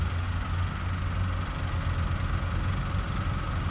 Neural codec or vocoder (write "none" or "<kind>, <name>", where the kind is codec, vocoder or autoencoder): none